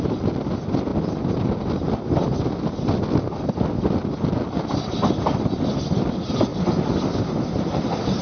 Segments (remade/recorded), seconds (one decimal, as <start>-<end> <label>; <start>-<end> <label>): 0.0-8.2 recorded